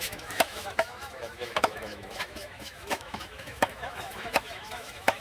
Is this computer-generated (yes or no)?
yes